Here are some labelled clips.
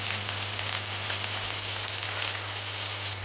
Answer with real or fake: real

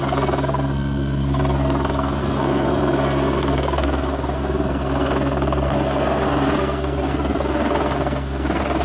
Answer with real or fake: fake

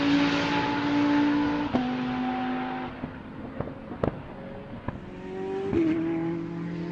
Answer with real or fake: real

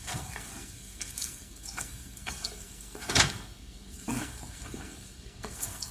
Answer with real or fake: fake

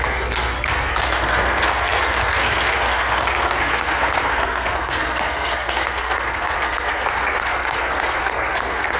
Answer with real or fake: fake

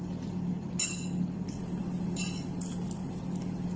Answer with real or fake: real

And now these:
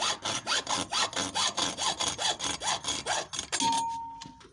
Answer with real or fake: real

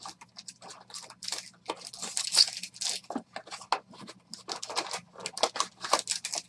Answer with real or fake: real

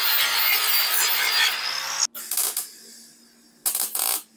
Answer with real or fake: real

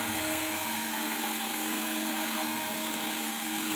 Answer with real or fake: fake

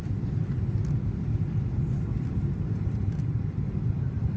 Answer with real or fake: real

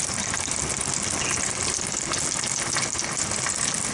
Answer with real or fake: real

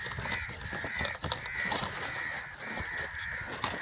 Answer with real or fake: real